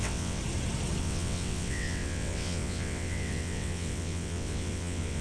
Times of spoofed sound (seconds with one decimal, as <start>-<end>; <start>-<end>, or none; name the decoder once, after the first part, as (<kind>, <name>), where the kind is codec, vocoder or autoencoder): 0.0-0.4 (vocoder, WaveNeXt); 1.0-5.2